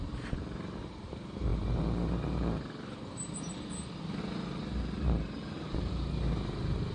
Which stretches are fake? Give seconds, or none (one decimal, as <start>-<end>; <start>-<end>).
0.0-6.9